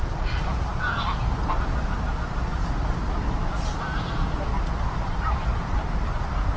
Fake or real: real